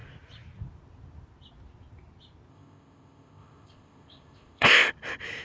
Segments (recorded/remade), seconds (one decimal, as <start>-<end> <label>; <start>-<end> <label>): 0.0-2.5 recorded; 2.5-4.9 remade; 4.9-5.4 recorded